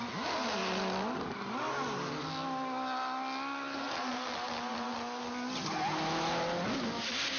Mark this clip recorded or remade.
recorded